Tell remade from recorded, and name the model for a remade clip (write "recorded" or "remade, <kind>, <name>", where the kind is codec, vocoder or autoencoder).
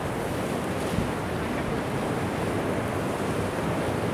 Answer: recorded